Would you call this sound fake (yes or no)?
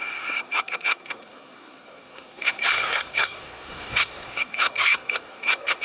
yes